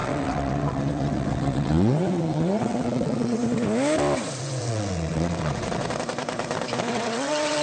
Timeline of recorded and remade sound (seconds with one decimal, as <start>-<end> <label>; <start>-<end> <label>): 0.0-3.4 remade; 3.4-4.4 recorded; 4.4-5.8 remade; 5.8-6.9 recorded; 6.9-7.6 remade